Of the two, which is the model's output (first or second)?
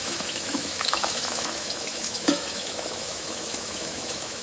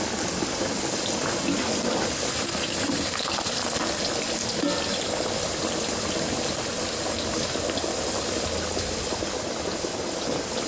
first